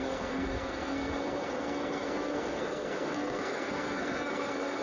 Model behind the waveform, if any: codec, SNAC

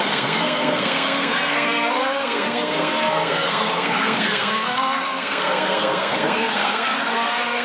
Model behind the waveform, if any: codec, SNAC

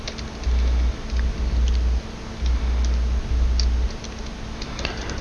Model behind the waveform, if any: none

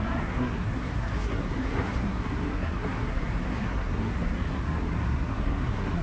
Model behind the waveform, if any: codec, SNAC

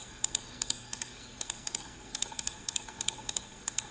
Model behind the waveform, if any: codec, SNAC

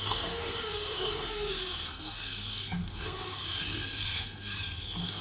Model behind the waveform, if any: codec, SNAC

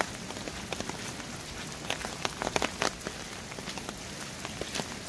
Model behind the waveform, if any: none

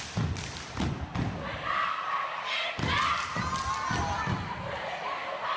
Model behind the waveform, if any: none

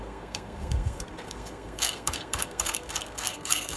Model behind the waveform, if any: codec, SNAC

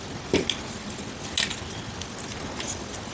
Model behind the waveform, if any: none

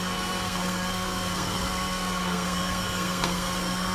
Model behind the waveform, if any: codec, SNAC